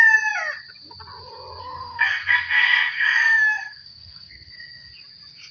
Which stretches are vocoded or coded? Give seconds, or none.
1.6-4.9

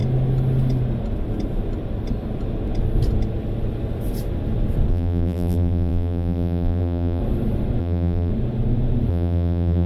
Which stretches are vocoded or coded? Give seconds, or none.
4.9-7.2; 7.8-8.3; 9.1-9.9

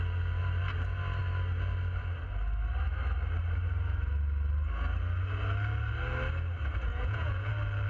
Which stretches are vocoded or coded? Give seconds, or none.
6.9-7.5

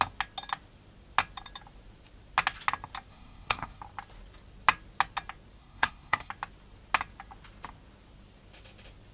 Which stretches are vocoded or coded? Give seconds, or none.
3.1-3.8; 5.6-6.3

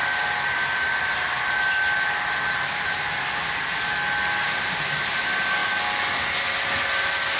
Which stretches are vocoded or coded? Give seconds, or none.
none